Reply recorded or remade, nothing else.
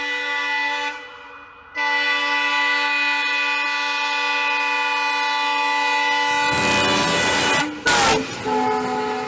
recorded